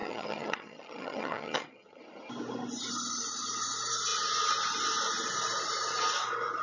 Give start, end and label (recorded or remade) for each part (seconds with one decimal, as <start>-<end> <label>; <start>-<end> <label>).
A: 0.0-2.0 remade; 2.0-6.6 recorded